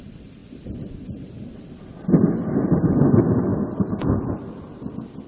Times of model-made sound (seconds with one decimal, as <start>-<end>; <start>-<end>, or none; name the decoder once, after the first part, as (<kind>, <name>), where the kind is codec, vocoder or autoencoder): 0.0-5.3 (vocoder, BigVGAN v2)